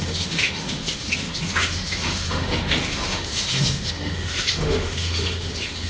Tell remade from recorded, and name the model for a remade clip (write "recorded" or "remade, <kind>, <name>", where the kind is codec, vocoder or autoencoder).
remade, autoencoder, DAC-VAE